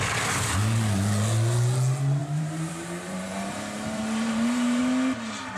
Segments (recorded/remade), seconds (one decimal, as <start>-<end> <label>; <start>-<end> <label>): 0.0-2.2 recorded; 2.2-4.8 remade; 4.8-5.6 recorded